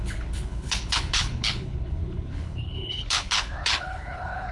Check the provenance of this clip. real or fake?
fake